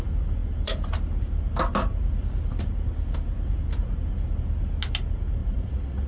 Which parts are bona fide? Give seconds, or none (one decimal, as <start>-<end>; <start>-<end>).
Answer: 0.0-5.4